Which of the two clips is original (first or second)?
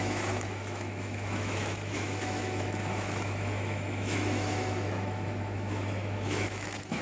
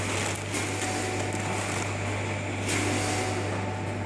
second